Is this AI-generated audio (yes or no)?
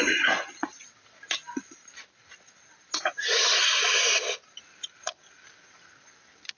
no